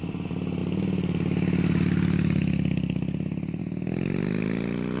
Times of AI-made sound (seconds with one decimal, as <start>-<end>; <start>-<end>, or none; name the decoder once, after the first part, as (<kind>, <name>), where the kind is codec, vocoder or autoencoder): none

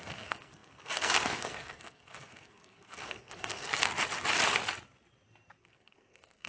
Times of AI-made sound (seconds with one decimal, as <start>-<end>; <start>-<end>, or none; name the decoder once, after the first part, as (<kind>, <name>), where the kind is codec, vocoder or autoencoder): 0.0-3.9 (codec, SNAC); 5.6-6.5